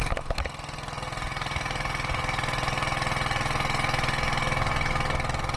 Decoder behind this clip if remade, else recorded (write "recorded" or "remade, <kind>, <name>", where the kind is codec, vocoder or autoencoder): recorded